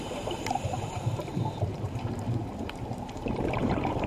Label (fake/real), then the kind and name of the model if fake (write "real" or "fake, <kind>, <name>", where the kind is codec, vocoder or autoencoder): fake, vocoder, BigVGAN v2